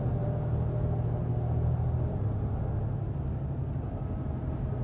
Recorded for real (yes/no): yes